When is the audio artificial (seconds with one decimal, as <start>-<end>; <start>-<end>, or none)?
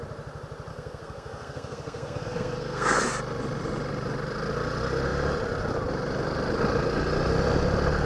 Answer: 0.7-3.0